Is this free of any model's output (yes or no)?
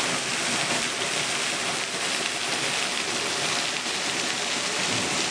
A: yes